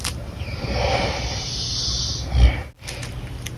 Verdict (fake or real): real